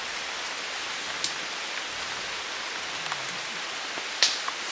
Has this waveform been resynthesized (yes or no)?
no